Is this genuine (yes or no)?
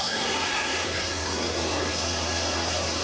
no